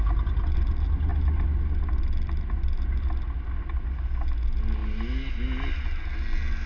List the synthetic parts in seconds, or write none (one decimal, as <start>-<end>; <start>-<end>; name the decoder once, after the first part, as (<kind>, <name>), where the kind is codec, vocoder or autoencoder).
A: none